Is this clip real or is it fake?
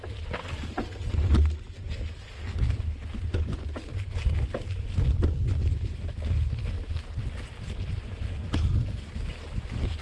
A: real